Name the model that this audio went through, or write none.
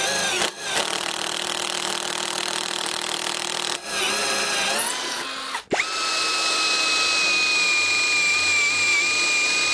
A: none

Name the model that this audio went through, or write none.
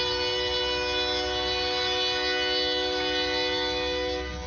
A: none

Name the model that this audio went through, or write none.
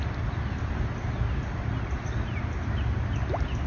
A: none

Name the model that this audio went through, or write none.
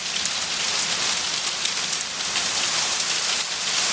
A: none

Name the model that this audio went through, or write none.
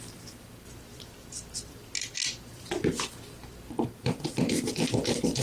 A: vocoder, BigVGAN v2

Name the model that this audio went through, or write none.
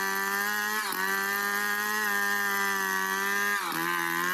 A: none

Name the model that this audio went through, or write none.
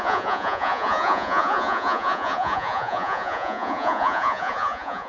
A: vocoder, Vocos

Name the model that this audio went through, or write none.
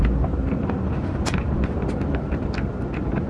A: none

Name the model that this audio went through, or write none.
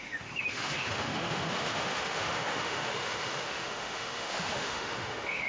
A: autoencoder, DAC-VAE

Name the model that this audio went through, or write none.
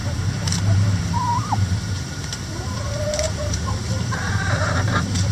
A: vocoder, BigVGAN v2